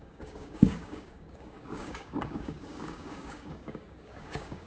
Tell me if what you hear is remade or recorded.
remade